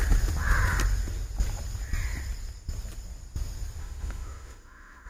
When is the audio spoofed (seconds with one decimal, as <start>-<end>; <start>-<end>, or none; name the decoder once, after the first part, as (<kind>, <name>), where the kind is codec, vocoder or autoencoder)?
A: 3.8-5.1 (autoencoder, DAC-VAE)